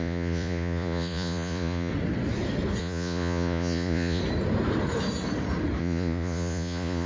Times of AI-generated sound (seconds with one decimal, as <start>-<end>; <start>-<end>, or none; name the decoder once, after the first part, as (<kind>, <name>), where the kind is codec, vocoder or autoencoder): 0.0-1.9 (vocoder, Vocos); 2.8-4.2; 5.8-7.1